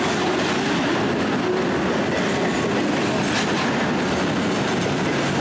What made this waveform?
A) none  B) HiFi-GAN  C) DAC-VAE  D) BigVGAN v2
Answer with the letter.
A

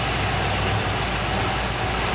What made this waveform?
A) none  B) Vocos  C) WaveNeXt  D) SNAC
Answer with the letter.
A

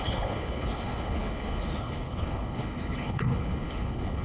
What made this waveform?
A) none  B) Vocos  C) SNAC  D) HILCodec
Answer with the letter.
D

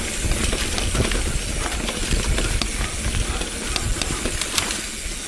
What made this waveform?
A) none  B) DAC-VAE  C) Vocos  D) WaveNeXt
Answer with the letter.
A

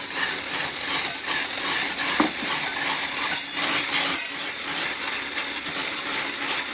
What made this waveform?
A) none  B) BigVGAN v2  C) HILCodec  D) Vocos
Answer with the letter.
A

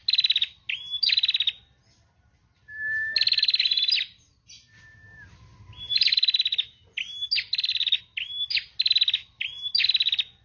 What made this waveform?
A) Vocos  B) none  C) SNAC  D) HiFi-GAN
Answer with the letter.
B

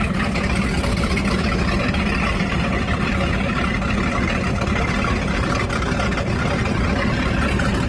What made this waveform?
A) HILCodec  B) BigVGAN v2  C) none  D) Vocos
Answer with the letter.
C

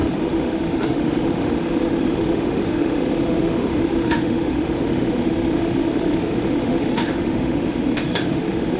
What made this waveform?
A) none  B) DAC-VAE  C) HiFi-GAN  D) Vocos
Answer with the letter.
B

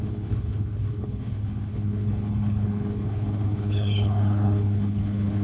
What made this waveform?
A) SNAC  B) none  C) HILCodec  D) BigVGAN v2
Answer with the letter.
C